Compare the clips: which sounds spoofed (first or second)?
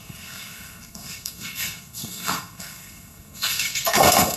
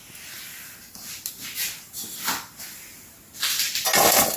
first